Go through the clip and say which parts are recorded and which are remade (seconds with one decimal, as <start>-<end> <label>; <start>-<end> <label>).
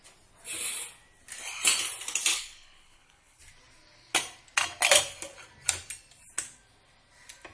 0.0-2.3 recorded; 2.3-3.4 remade; 3.4-7.5 recorded